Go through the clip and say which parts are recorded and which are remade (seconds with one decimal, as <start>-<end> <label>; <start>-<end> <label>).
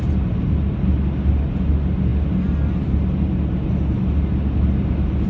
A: 0.0-5.3 recorded